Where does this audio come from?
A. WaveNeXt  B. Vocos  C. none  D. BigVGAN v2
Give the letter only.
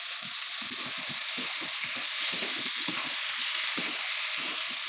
C